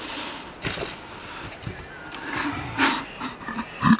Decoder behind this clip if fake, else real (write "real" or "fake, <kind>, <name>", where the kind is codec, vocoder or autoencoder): real